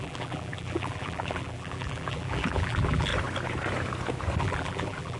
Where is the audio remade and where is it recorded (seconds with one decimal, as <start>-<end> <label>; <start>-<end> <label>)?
0.0-3.1 remade; 3.1-4.4 recorded; 4.4-5.2 remade